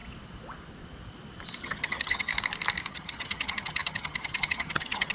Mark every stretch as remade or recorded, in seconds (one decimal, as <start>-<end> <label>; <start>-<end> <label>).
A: 0.0-1.6 recorded; 1.6-2.3 remade; 2.3-2.9 recorded; 2.9-5.1 remade

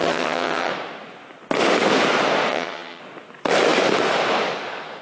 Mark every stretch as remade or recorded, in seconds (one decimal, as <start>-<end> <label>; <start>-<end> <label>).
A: 0.0-0.7 remade; 0.7-2.5 recorded; 2.5-3.0 remade; 3.0-5.0 recorded

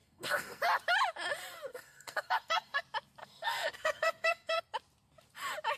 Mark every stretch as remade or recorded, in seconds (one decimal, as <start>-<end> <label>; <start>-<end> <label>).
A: 0.0-0.6 remade; 0.6-1.7 recorded; 1.7-2.8 remade; 2.8-3.2 recorded; 3.2-4.6 remade; 4.6-5.8 recorded

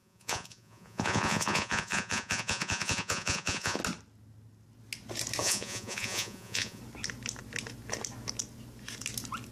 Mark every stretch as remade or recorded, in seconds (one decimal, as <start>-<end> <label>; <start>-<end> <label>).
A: 0.0-3.8 remade; 3.8-5.4 recorded; 5.4-6.8 remade; 6.8-9.5 recorded

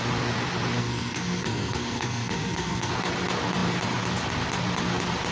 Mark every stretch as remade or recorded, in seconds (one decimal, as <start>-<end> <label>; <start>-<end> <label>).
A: 0.0-0.8 recorded; 0.8-2.9 remade; 2.9-5.3 recorded

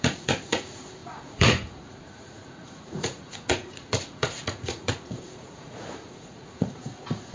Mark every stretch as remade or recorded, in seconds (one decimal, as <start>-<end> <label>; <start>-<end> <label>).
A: 0.0-7.3 remade

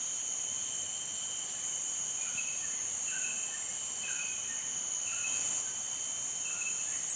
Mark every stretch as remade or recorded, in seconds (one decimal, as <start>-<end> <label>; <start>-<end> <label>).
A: 0.0-1.4 recorded; 1.4-3.7 remade; 3.7-7.2 recorded

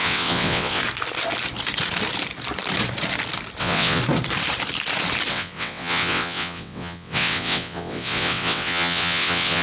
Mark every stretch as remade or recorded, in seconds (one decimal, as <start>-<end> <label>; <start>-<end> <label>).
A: 0.0-0.8 remade; 0.8-3.6 recorded; 3.6-4.0 remade; 4.0-5.3 recorded; 5.3-9.6 remade